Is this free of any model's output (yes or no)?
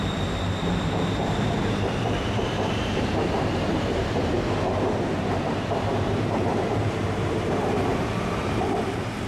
no